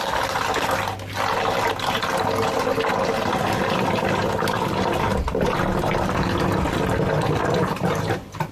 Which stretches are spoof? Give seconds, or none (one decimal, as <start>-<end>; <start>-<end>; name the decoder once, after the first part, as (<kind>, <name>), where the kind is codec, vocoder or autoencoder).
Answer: 7.4-8.1 (vocoder, BigVGAN v2)